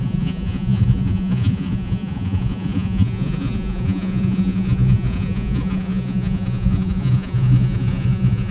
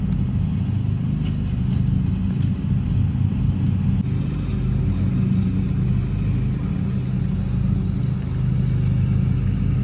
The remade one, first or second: first